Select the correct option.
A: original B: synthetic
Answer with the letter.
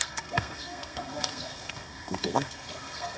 B